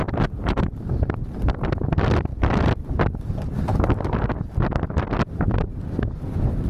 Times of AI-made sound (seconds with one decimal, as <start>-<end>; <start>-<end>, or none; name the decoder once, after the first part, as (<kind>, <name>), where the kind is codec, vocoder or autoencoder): none